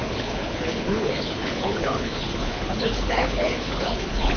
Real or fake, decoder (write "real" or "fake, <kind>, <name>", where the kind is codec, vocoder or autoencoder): fake, codec, HILCodec